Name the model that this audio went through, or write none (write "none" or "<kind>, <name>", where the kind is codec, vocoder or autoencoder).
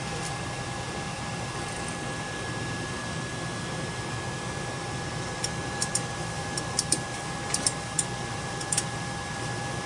vocoder, BigVGAN v2